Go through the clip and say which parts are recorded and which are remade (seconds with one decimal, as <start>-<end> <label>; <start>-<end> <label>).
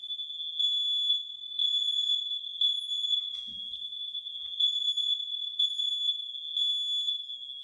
0.0-1.6 recorded; 1.6-5.9 remade; 5.9-7.6 recorded